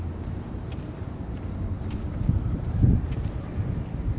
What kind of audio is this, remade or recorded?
recorded